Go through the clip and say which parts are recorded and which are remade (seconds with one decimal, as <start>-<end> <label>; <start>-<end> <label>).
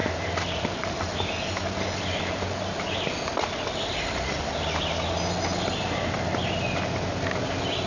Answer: 0.0-1.0 remade; 1.0-7.9 recorded